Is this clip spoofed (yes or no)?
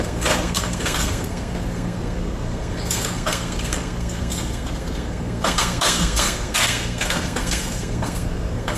yes